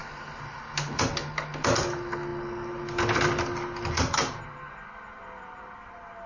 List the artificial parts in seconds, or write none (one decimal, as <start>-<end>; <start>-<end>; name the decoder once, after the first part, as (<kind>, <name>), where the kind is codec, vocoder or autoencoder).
none